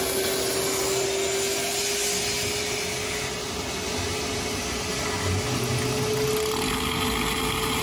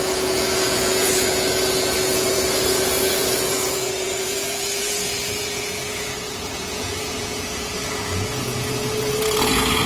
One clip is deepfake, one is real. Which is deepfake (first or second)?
second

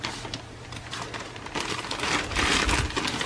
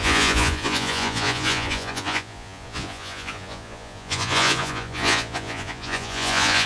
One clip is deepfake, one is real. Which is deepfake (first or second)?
second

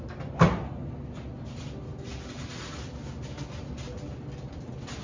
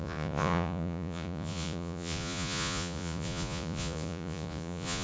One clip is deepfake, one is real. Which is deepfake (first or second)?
second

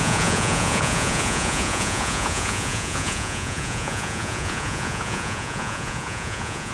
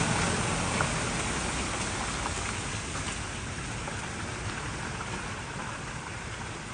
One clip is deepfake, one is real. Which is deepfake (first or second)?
first